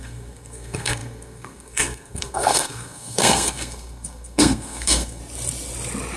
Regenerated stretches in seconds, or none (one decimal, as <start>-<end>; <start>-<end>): 0.0-5.2

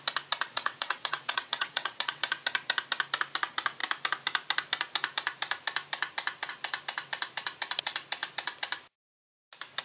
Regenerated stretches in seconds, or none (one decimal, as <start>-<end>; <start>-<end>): 0.5-2.3

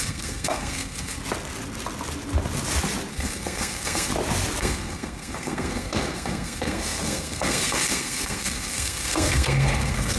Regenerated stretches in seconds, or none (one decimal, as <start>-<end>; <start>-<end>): 0.0-1.2; 3.1-4.1; 4.6-10.2

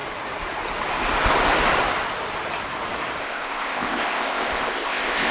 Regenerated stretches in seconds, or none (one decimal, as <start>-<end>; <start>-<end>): 3.2-5.3

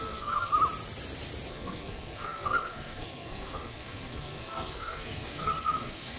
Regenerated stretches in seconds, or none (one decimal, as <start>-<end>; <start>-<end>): 0.0-0.5; 1.5-6.2

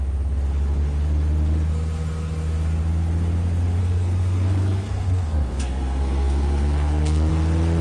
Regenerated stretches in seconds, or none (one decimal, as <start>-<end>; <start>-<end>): 3.8-7.3

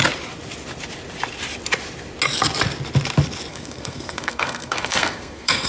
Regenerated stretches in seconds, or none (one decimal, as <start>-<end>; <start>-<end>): 3.5-5.7